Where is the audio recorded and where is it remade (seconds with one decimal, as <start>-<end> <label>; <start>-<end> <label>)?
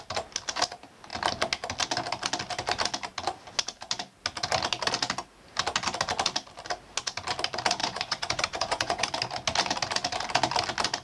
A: 0.0-7.8 recorded; 7.8-9.0 remade; 9.0-11.0 recorded